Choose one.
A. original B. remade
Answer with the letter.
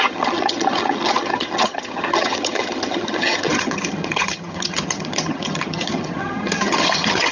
B